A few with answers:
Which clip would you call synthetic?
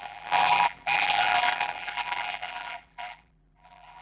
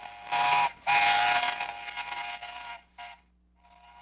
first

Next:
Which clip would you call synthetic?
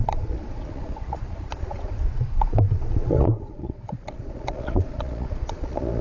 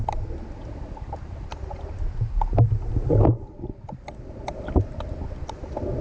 first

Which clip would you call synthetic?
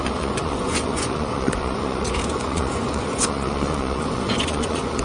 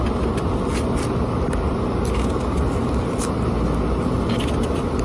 first